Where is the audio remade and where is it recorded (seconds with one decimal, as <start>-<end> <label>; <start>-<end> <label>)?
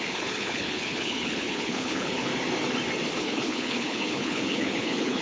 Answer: 0.0-2.3 remade; 2.3-3.2 recorded; 3.2-5.2 remade